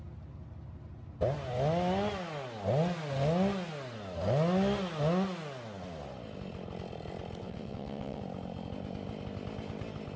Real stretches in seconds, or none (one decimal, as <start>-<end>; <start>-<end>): 0.0-7.4; 8.2-10.2